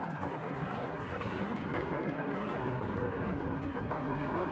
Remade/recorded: remade